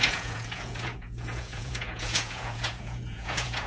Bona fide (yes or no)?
no